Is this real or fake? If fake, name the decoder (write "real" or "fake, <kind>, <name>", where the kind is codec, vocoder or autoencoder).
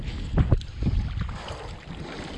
real